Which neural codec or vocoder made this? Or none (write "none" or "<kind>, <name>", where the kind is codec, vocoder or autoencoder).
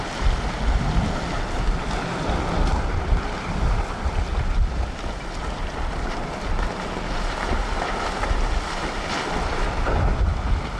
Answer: none